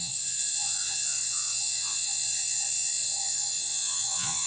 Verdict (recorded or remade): remade